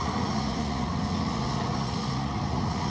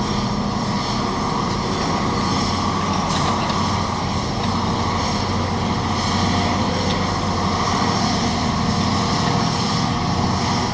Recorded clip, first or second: second